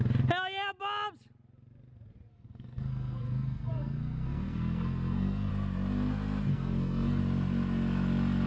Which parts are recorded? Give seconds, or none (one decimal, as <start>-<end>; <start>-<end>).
0.0-2.3; 5.5-6.5; 7.2-8.5

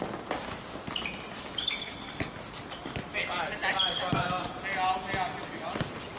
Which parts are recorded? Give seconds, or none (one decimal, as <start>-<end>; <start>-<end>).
0.0-6.2

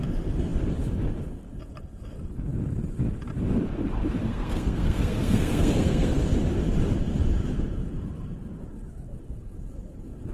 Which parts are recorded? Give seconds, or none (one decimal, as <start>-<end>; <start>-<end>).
0.0-4.2; 6.2-10.3